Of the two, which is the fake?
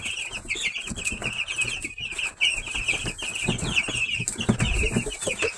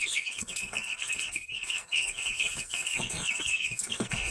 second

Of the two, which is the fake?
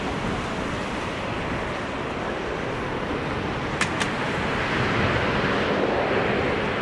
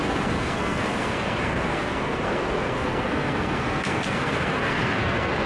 second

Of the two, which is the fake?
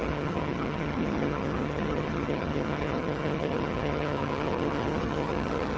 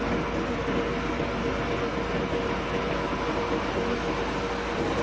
first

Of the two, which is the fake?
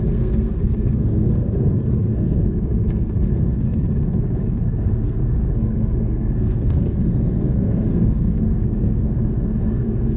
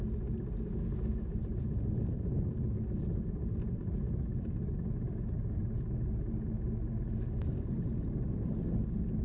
first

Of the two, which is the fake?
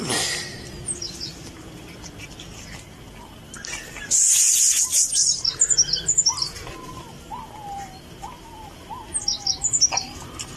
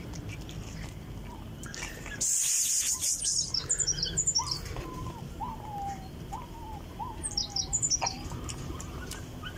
second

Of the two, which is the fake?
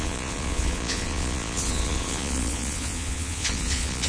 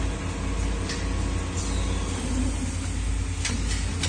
first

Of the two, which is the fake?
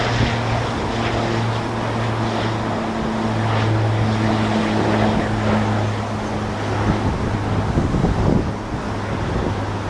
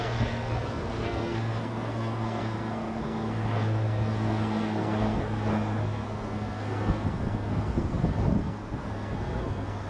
second